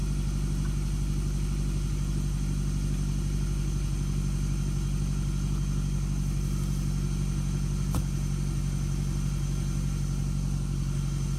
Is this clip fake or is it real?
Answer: real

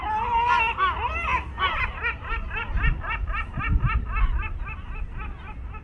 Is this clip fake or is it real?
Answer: real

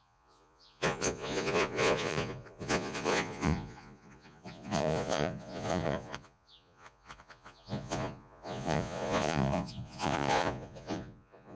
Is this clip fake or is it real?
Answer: fake